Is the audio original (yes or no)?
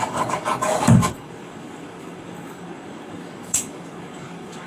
no